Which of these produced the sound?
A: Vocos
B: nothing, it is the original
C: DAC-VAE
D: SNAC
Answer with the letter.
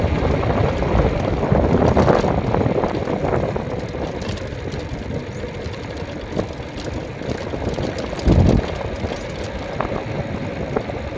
B